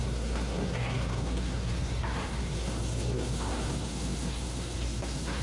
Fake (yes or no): yes